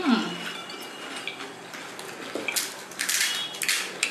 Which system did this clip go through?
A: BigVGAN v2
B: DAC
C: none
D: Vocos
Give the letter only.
C